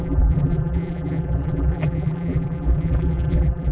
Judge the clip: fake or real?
fake